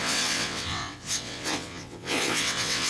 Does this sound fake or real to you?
fake